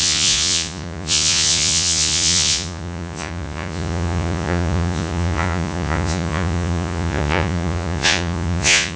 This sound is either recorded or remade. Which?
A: remade